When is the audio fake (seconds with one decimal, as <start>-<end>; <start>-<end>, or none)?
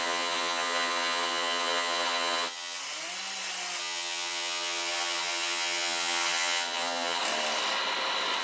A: 0.0-2.8; 3.8-7.2